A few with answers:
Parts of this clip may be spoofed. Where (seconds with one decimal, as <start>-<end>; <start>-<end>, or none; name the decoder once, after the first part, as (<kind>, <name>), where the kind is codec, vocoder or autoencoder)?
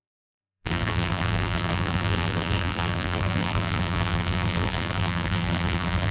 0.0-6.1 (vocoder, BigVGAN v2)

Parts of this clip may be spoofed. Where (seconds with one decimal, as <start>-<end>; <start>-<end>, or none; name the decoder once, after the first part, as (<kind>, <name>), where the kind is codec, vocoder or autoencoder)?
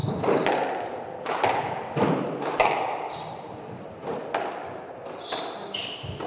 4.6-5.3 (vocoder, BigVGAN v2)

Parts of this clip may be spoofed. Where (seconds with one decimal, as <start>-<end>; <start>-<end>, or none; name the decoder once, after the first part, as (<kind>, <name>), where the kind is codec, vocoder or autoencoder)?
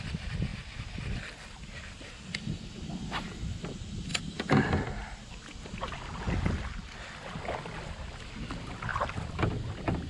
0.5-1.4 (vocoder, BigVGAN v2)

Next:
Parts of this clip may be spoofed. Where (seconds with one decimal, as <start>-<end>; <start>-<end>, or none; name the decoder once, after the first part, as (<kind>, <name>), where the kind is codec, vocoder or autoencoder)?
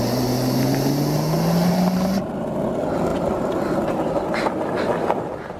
none